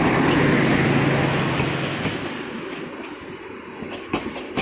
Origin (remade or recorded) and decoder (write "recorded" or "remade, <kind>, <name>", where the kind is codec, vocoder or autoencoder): recorded